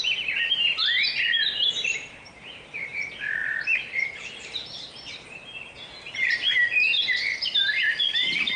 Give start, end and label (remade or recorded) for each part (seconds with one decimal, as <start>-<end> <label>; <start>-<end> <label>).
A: 0.0-8.6 remade